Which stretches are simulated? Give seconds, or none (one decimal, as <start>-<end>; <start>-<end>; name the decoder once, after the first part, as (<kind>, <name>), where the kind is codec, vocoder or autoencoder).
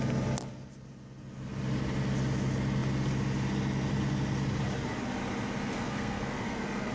5.7-6.9 (codec, SNAC)